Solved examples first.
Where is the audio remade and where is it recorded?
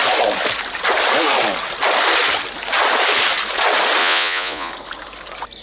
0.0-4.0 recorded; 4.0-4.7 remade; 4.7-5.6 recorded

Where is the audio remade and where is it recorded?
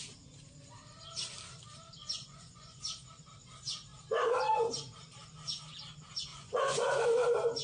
0.0-2.0 recorded; 2.0-2.8 remade; 2.8-6.3 recorded; 6.3-7.0 remade; 7.0-7.6 recorded